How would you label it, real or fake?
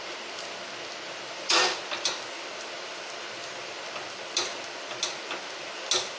real